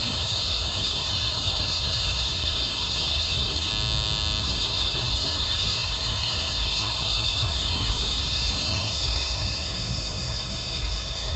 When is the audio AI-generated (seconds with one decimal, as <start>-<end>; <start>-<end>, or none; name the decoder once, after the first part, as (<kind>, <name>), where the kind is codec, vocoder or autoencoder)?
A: 0.0-3.7 (codec, SNAC); 4.4-11.4